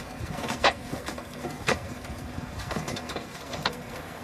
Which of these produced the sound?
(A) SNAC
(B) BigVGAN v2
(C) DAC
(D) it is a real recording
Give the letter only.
A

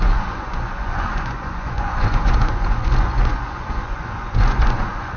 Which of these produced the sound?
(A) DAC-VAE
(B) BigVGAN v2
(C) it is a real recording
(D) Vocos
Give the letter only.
D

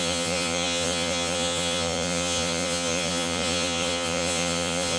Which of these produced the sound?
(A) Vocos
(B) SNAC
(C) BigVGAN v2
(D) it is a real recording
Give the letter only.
A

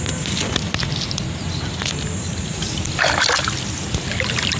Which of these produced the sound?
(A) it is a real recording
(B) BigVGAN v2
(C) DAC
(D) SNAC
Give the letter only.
A